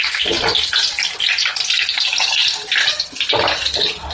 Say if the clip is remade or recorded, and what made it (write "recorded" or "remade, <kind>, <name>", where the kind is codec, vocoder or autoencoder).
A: recorded